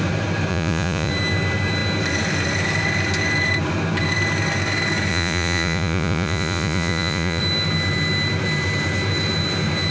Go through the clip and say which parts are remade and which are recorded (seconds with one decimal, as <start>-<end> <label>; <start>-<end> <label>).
0.0-0.5 recorded; 0.5-1.1 remade; 1.1-5.1 recorded; 5.1-7.4 remade; 7.4-9.9 recorded

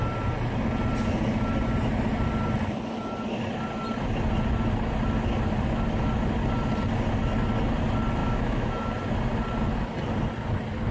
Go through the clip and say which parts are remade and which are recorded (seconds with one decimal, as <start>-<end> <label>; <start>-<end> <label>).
0.0-8.2 recorded; 8.2-8.9 remade; 8.9-10.9 recorded